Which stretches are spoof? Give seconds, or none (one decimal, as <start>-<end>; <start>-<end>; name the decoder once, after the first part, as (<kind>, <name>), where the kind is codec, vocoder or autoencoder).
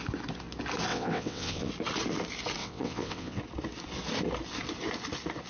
0.9-1.7 (vocoder, WaveNeXt); 2.6-3.4